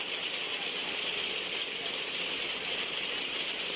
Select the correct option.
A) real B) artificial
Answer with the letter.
A